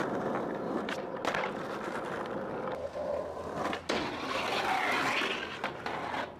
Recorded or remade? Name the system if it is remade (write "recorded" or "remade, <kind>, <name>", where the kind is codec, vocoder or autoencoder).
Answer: recorded